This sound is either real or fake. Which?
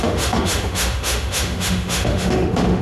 fake